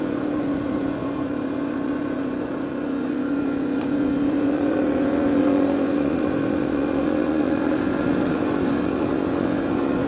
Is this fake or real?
fake